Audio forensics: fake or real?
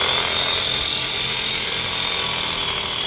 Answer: real